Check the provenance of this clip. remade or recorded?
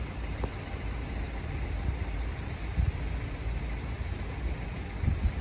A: recorded